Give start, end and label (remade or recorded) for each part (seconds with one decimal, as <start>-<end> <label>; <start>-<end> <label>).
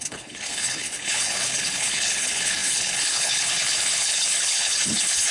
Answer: 0.0-5.3 remade